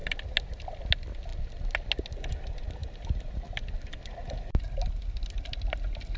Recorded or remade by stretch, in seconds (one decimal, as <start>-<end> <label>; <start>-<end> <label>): 0.0-6.2 recorded